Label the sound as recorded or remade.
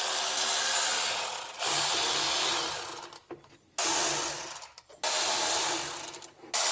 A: recorded